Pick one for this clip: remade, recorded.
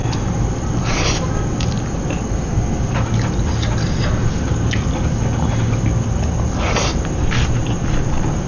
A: recorded